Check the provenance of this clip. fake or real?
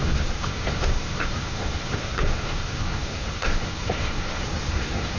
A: fake